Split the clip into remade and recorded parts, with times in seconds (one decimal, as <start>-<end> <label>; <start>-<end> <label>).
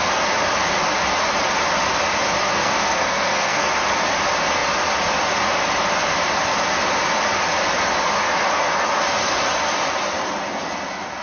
0.0-2.5 recorded; 2.5-3.7 remade; 3.7-11.2 recorded